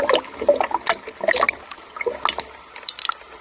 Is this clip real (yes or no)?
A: yes